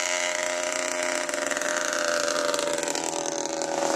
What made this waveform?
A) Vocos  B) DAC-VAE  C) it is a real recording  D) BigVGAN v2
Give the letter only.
C